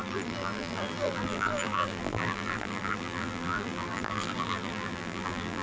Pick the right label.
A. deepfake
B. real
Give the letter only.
A